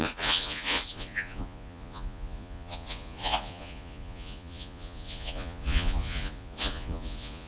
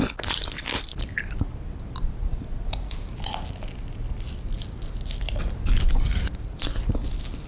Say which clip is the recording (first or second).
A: second